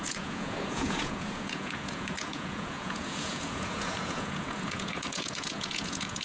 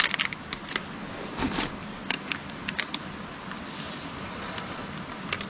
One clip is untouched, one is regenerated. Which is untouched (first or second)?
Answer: second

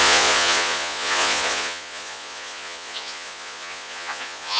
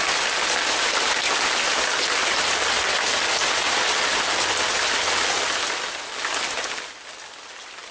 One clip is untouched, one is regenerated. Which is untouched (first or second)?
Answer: second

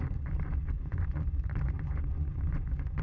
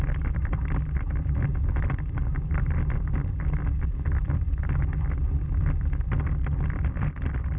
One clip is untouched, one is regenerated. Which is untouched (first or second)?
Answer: second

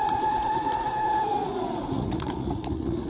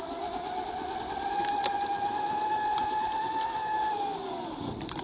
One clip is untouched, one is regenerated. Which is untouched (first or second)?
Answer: second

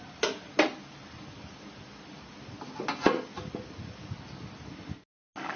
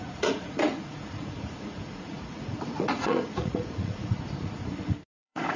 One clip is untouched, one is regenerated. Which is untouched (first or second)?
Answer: first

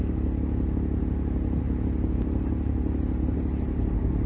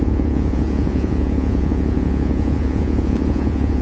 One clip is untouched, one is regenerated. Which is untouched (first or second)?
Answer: first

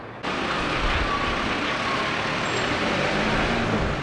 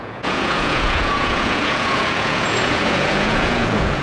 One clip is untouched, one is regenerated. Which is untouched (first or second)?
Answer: first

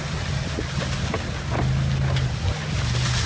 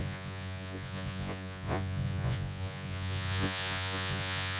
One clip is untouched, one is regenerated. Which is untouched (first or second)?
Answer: first